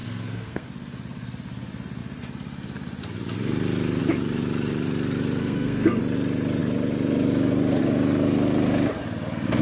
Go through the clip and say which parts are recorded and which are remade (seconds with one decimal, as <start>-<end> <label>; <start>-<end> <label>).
0.0-0.7 remade; 0.7-5.4 recorded; 5.4-6.0 remade; 6.0-9.6 recorded